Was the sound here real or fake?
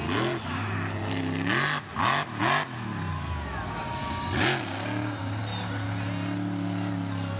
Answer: real